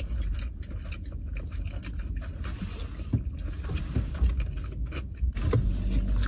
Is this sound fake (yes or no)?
no